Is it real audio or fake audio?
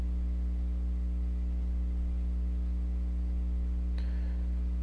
real